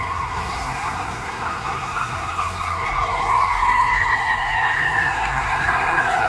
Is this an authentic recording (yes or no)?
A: no